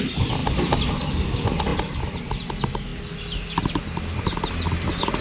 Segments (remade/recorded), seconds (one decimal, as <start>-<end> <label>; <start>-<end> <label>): 0.0-5.2 recorded